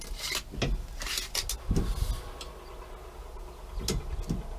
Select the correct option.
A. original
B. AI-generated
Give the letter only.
A